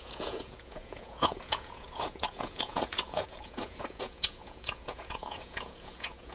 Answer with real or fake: fake